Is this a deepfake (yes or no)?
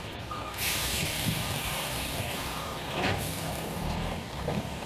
yes